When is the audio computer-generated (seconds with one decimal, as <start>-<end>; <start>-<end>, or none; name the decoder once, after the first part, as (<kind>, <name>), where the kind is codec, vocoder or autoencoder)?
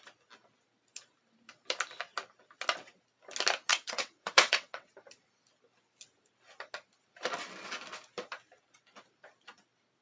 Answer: 3.7-4.9 (vocoder, WaveNeXt)